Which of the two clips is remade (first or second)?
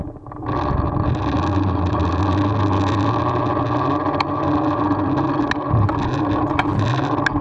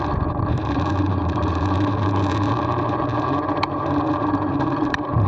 second